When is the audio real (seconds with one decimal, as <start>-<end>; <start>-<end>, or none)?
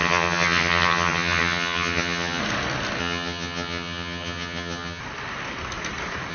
2.4-3.0; 5.0-6.3